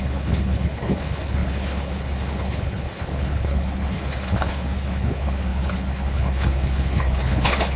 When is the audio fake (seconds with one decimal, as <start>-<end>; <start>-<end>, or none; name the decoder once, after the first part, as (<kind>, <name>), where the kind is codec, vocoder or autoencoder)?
0.0-7.8 (codec, HILCodec)